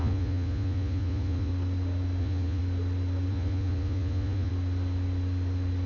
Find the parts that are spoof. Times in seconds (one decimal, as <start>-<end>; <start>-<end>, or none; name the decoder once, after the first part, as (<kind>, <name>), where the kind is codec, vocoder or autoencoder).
0.0-1.5 (vocoder, Vocos); 2.2-2.6; 3.3-4.5